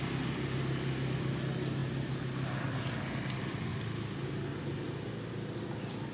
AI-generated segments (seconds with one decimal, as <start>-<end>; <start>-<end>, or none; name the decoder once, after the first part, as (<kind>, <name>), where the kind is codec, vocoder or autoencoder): none